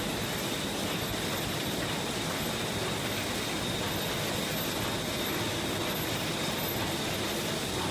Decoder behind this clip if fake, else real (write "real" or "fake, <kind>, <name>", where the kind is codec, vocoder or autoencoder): real